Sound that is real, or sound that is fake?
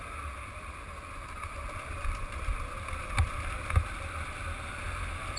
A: real